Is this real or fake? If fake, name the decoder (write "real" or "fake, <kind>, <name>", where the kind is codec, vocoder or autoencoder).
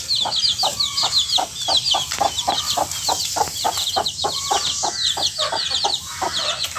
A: real